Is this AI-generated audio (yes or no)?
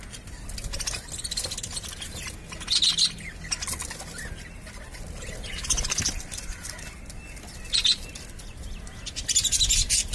no